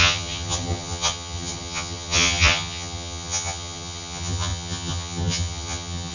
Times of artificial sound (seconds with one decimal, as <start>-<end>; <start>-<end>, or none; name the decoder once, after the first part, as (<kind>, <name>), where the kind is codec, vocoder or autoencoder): 0.0-6.1 (vocoder, HiFi-GAN)